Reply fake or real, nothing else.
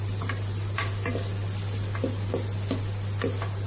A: real